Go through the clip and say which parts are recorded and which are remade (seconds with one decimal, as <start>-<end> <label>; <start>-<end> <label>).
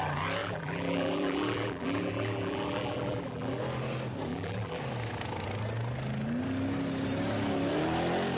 0.0-0.4 recorded; 0.4-3.6 remade; 3.6-4.3 recorded; 4.3-4.8 remade; 4.8-8.4 recorded